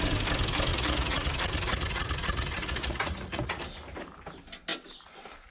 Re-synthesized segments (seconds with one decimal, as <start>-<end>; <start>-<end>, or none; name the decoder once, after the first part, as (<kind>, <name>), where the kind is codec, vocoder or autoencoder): 0.7-3.6 (vocoder, Vocos)